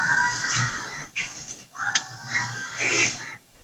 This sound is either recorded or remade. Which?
remade